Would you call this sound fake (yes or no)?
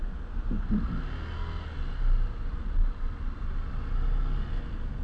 no